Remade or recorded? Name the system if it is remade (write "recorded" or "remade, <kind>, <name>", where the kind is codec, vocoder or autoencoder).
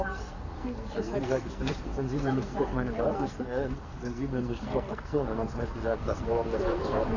remade, codec, SNAC